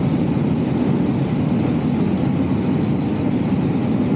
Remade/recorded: recorded